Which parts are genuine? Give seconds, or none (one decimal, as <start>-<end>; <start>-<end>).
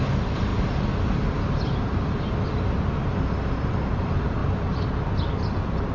0.0-5.9